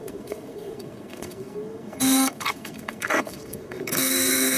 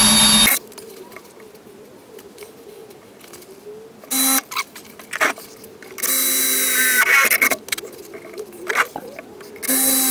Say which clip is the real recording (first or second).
second